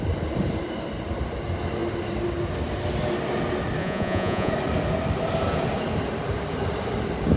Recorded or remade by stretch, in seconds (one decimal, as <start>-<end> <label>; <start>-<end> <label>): 0.0-3.8 recorded; 3.8-4.5 remade; 4.5-7.4 recorded